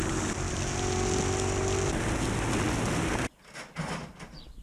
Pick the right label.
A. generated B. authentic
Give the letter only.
B